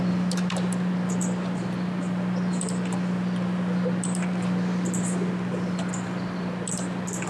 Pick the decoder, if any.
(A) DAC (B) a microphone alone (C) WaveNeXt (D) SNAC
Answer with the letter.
B